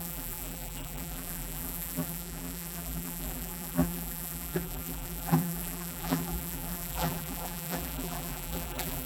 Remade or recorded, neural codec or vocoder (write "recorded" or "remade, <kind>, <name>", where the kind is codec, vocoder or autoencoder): remade, vocoder, BigVGAN v2